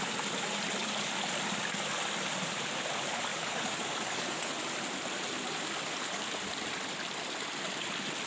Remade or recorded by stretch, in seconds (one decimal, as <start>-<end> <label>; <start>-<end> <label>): 0.0-3.3 recorded; 3.3-4.5 remade; 4.5-8.3 recorded